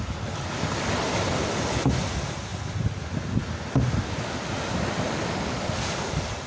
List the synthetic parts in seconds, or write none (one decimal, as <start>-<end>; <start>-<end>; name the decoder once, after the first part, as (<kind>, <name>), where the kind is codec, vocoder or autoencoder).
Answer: none